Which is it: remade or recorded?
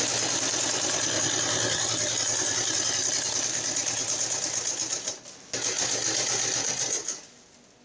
recorded